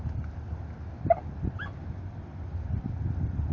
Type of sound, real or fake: real